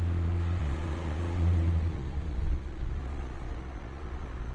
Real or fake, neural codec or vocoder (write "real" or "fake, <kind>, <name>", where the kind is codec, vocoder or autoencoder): fake, vocoder, Vocos